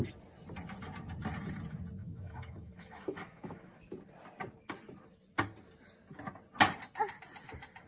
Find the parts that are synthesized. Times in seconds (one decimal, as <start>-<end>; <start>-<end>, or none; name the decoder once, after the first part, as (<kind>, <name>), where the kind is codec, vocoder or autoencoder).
2.0-3.8 (autoencoder, DAC-VAE)